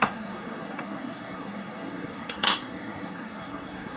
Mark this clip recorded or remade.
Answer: remade